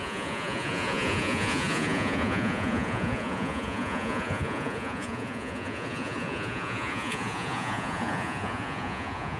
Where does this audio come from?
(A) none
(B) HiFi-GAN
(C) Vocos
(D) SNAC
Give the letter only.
C